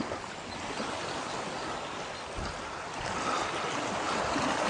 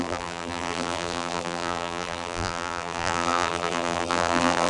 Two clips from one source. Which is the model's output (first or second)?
second